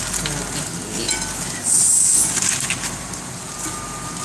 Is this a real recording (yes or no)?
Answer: yes